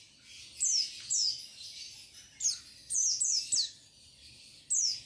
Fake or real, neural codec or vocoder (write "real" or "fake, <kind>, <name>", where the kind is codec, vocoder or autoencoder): real